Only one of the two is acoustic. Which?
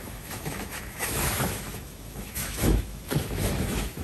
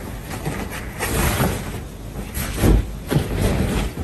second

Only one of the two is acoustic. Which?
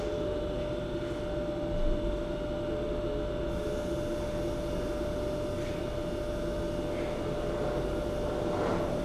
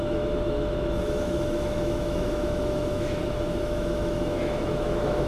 first